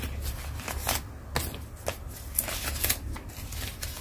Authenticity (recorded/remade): recorded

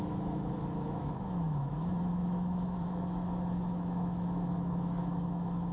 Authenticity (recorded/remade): remade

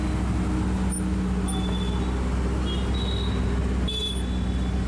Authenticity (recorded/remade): recorded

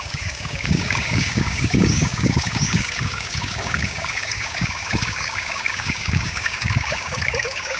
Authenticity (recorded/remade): remade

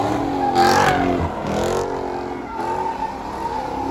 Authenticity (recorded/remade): recorded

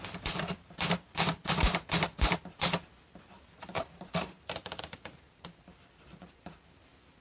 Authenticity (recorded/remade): remade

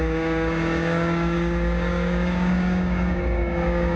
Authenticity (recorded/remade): remade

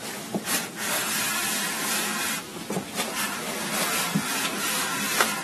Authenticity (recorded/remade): remade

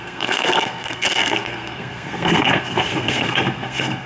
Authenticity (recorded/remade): remade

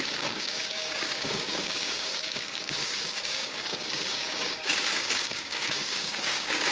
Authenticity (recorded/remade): remade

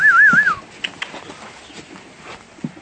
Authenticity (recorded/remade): recorded